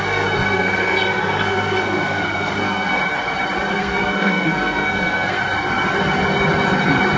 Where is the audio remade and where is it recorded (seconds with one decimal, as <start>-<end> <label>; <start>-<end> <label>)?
0.0-3.0 remade; 3.0-3.7 recorded; 3.7-5.4 remade; 5.4-7.2 recorded